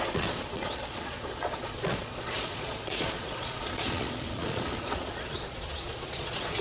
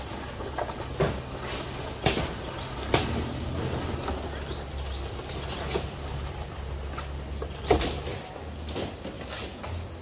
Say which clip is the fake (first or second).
first